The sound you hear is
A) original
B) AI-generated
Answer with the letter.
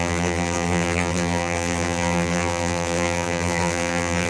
B